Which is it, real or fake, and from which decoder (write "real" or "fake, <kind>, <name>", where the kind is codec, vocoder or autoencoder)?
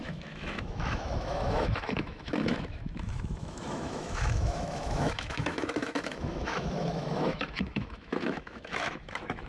fake, autoencoder, DAC-VAE